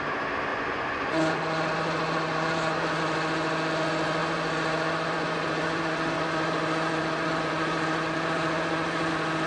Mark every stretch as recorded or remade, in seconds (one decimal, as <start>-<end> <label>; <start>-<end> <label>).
0.0-0.5 recorded; 0.5-3.0 remade; 3.0-4.2 recorded; 4.2-9.1 remade; 9.1-9.5 recorded